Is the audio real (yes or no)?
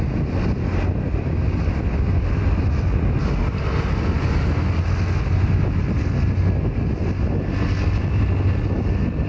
yes